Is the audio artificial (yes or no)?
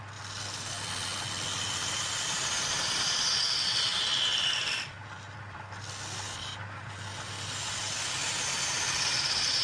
no